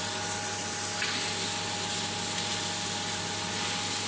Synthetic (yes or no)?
no